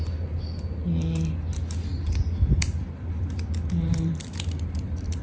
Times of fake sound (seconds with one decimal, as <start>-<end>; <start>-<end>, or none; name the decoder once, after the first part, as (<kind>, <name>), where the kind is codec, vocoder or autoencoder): 1.9-5.2 (vocoder, BigVGAN v2)